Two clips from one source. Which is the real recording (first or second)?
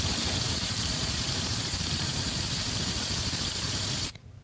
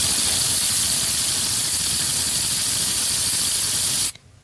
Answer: second